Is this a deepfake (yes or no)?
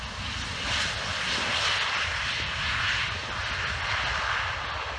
no